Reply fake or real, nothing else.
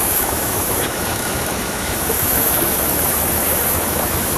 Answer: fake